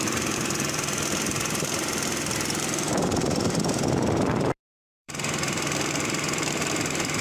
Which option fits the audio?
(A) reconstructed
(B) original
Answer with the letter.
A